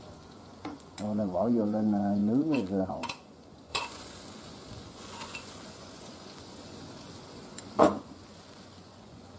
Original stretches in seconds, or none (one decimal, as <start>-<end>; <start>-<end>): none